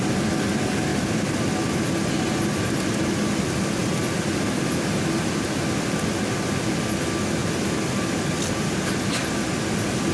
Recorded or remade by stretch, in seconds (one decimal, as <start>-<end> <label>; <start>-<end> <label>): 0.0-0.9 recorded; 0.9-2.1 remade; 2.1-7.4 recorded; 7.4-9.3 remade; 9.3-10.1 recorded